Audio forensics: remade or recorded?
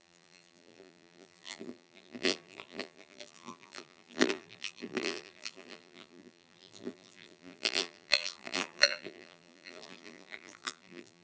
remade